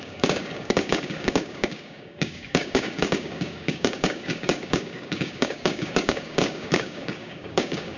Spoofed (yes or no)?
yes